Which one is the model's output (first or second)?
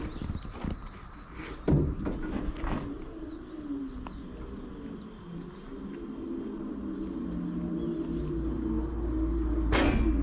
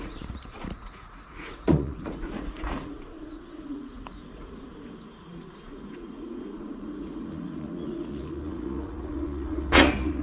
second